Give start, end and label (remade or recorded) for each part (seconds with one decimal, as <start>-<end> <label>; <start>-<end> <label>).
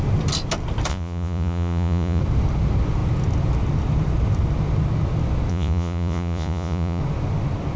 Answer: 0.0-0.9 recorded; 0.9-2.2 remade; 2.2-5.5 recorded; 5.5-7.0 remade; 7.0-7.8 recorded